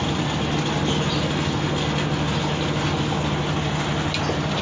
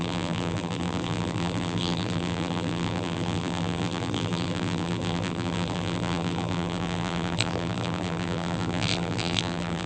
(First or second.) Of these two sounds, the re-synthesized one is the second